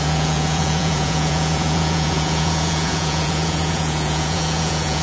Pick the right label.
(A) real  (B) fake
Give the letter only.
B